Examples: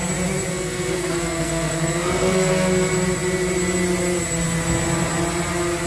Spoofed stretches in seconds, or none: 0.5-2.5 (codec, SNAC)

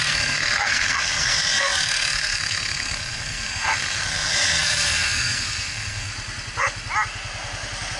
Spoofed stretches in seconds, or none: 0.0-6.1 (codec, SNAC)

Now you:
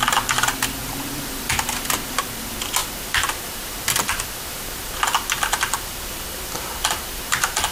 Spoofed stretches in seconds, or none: 0.8-1.5 (vocoder, BigVGAN v2); 2.8-7.3

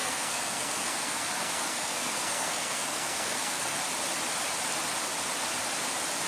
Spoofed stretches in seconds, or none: 0.0-3.8 (codec, SNAC)